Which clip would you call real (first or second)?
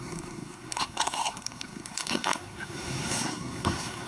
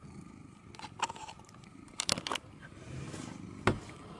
second